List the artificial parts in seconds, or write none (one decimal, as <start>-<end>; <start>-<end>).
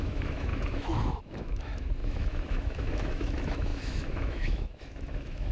0.0-5.5